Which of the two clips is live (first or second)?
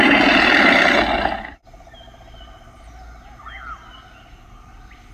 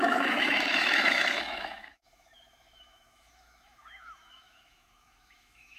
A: first